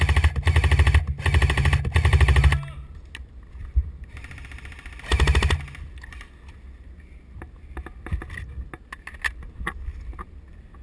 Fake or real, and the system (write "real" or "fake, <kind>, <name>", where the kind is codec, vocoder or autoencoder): real